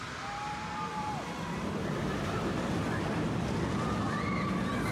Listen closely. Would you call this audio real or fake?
real